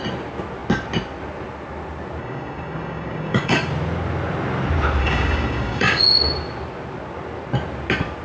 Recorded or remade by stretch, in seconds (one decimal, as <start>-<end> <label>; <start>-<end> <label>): 0.0-2.2 recorded; 2.2-3.7 remade; 3.7-5.0 recorded; 5.0-6.0 remade; 6.0-8.2 recorded